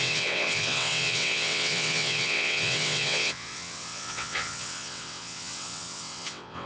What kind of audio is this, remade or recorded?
remade